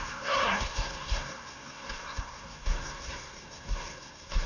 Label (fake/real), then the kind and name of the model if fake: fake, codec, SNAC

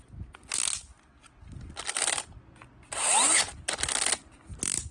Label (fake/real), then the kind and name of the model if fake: real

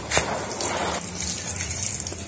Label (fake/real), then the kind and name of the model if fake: real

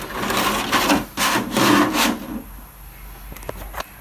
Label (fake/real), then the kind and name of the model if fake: real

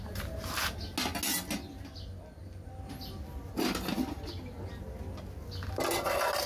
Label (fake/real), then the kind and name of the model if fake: real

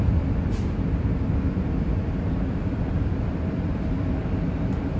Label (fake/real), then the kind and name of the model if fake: real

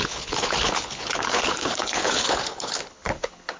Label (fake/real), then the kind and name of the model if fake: fake, codec, HILCodec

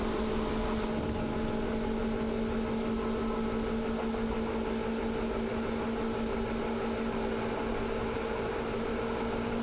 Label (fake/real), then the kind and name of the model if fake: real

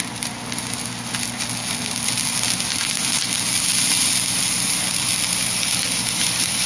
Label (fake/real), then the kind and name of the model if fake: real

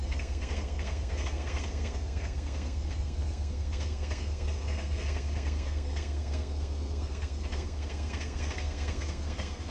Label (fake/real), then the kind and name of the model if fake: fake, codec, SNAC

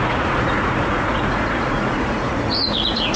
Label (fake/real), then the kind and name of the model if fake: fake, vocoder, Vocos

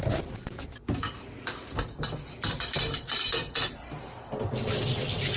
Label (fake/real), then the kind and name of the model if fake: fake, vocoder, BigVGAN v2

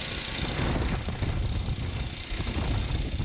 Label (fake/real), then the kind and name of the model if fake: real